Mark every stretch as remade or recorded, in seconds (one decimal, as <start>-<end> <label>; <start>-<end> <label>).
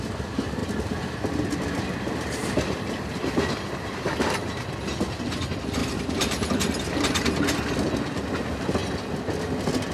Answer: 0.0-0.6 recorded; 0.6-4.7 remade; 4.7-5.8 recorded; 5.8-6.5 remade; 6.5-9.9 recorded